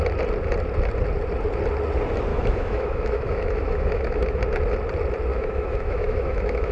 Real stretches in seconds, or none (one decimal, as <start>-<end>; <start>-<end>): 0.0-2.3; 4.4-5.3